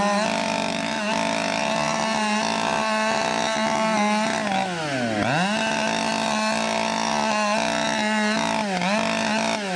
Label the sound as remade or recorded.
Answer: recorded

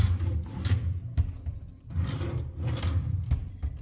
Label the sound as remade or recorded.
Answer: recorded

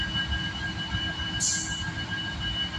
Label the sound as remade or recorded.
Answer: recorded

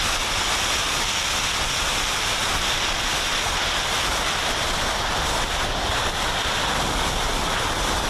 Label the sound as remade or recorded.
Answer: recorded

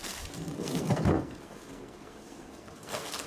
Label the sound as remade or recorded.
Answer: remade